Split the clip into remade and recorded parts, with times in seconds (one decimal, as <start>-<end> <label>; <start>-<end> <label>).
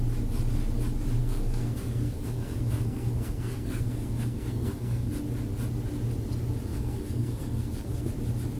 0.0-1.2 recorded; 1.2-5.1 remade; 5.1-6.7 recorded; 6.7-8.1 remade; 8.1-8.6 recorded